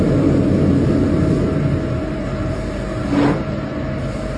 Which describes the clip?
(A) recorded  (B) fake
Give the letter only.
A